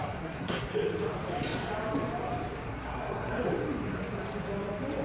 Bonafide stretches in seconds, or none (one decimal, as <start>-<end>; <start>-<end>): 0.7-2.7; 3.5-5.0